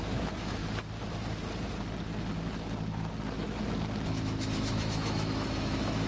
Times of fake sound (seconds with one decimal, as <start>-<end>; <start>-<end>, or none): 0.0-0.6; 4.2-6.1